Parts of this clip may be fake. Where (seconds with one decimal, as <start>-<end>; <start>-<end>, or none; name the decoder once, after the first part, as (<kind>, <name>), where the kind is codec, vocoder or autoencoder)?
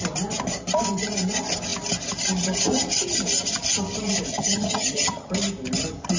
4.3-5.3 (vocoder, HiFi-GAN)